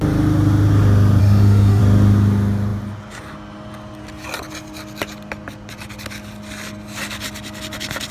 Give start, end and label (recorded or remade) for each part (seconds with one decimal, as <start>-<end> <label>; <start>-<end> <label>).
0.0-1.2 recorded; 1.2-1.8 remade; 1.8-8.1 recorded